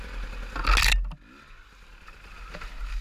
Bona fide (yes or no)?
yes